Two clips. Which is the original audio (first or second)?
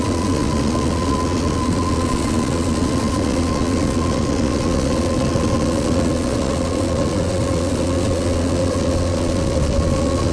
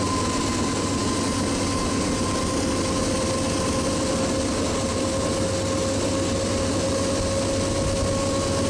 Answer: second